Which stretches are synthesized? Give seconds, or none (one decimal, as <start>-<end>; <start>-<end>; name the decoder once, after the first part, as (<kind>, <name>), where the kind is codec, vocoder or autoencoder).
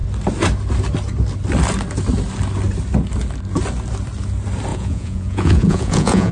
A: 4.7-6.3 (vocoder, Vocos)